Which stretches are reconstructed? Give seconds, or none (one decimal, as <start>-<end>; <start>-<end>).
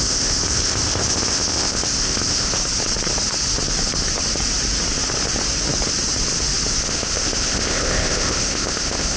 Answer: 0.0-2.6; 6.8-9.2